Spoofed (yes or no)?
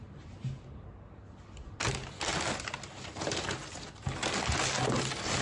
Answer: no